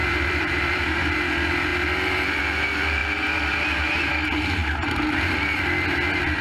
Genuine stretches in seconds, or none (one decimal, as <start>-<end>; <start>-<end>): 1.1-6.4